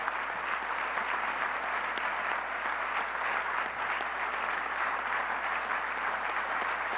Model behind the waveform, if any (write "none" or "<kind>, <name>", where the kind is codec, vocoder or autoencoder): none